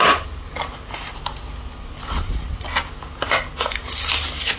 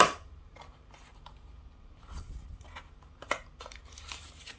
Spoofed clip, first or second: second